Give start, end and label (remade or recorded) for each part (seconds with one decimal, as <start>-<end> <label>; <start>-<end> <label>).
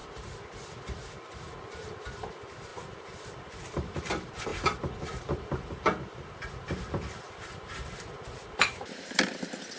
0.0-9.8 recorded